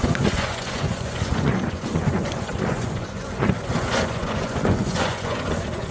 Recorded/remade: remade